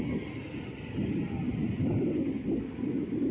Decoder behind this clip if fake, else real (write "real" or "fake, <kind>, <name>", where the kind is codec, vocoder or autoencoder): real